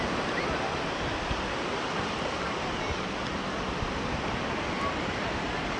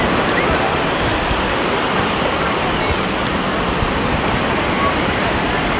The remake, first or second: first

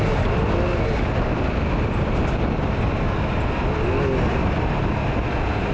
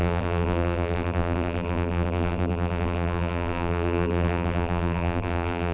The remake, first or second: second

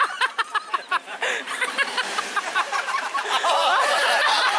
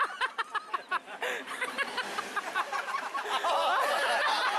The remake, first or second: first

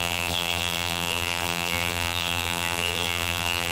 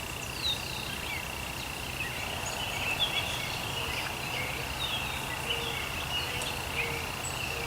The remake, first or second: first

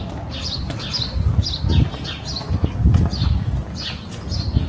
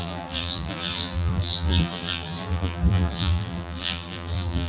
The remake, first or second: second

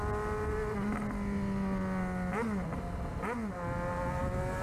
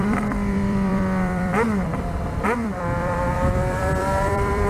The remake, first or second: second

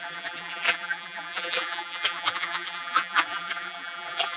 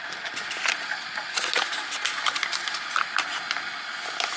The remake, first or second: first